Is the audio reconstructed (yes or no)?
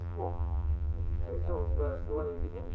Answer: yes